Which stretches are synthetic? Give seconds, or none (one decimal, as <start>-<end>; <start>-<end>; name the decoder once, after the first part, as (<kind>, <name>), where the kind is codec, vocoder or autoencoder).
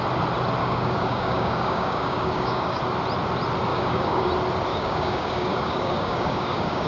0.6-2.8 (codec, DAC); 3.7-4.3; 4.7-6.9